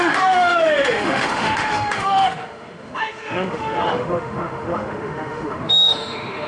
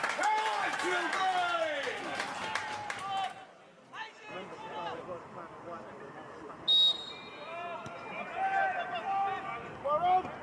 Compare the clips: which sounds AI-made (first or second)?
first